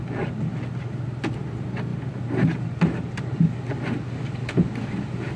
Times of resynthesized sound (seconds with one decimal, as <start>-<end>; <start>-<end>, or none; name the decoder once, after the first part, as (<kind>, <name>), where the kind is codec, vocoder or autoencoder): 1.9-3.2 (vocoder, BigVGAN v2)